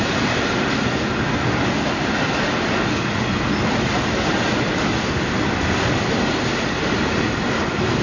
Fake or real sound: real